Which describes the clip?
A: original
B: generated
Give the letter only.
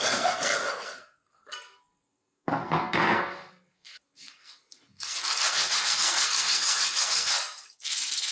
B